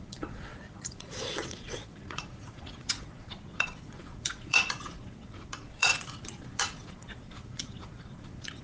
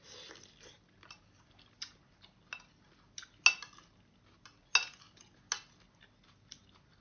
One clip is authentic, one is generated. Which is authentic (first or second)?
second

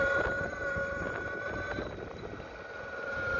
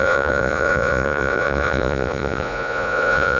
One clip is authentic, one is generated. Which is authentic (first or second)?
first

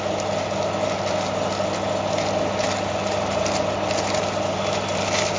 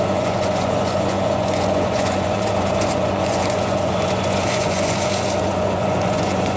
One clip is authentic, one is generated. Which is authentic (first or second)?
first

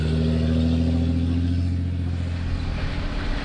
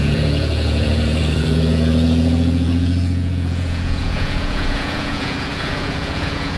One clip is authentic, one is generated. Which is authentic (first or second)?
first